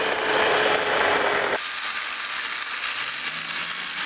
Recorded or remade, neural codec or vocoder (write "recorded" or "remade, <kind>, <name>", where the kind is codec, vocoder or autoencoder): recorded